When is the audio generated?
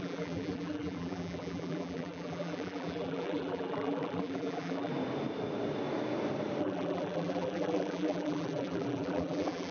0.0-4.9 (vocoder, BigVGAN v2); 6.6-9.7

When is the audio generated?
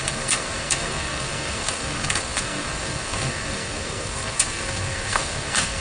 0.0-5.8 (codec, SNAC)